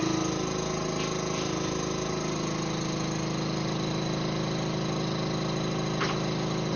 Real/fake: real